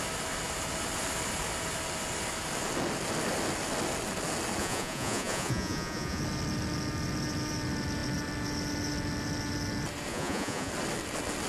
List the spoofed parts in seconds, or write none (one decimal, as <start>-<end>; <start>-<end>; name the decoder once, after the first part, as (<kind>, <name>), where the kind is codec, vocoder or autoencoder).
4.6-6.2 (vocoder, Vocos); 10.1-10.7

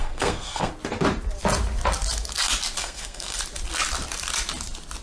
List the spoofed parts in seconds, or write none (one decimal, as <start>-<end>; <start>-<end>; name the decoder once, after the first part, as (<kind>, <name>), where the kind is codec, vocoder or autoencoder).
0.0-0.7 (codec, SNAC); 2.8-3.4

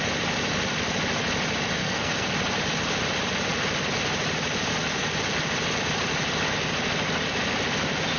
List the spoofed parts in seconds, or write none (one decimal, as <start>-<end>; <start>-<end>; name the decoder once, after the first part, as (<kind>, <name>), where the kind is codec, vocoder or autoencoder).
1.8-2.3 (codec, SNAC)

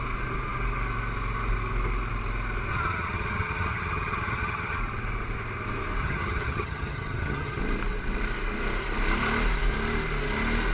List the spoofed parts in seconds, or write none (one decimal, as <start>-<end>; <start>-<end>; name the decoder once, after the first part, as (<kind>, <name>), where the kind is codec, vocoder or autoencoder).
2.7-4.8 (vocoder, HiFi-GAN); 6.0-7.6